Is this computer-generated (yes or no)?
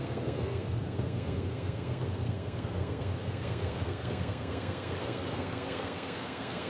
yes